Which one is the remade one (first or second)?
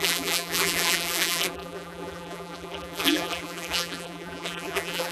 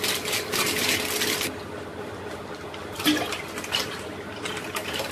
first